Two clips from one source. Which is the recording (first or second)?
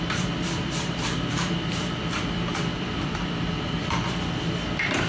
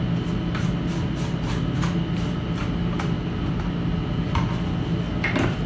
second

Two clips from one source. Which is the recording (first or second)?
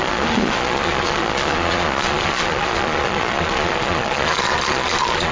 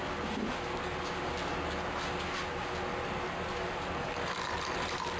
second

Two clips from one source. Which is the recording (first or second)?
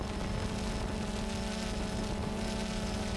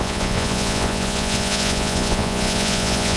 first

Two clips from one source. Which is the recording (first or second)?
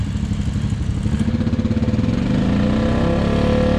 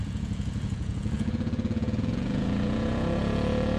first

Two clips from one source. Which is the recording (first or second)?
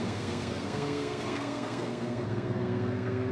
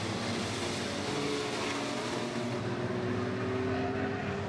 second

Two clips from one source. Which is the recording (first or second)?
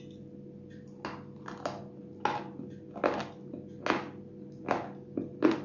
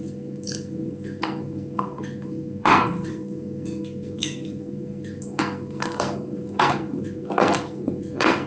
first